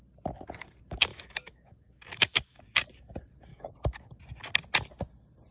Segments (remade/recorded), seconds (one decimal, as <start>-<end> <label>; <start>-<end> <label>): 0.0-1.1 recorded; 1.1-2.6 remade; 2.6-3.5 recorded; 3.5-4.2 remade; 4.2-5.5 recorded